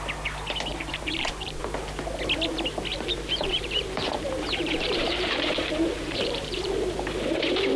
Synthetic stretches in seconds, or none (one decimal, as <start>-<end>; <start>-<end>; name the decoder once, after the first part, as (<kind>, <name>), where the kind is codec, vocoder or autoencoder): 0.7-1.6 (vocoder, BigVGAN v2); 2.9-6.8